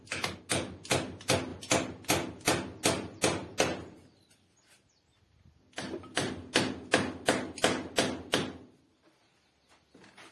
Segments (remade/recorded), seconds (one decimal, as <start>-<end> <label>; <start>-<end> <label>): 0.0-10.3 recorded